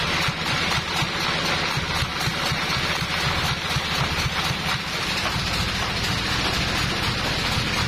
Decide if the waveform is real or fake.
real